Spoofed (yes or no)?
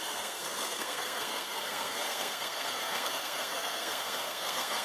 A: yes